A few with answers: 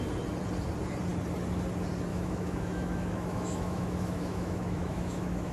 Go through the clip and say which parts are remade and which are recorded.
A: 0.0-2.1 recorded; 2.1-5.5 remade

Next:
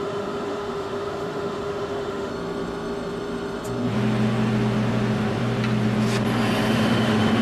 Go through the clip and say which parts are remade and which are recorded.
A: 0.0-2.3 remade; 2.3-6.7 recorded; 6.7-7.4 remade

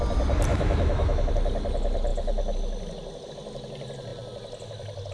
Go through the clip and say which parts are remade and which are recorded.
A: 0.0-0.5 recorded; 0.5-1.3 remade; 1.3-5.1 recorded

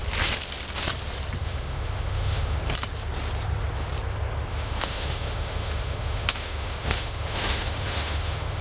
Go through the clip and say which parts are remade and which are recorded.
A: 0.0-1.4 recorded; 1.4-2.6 remade; 2.6-4.5 recorded; 4.5-8.6 remade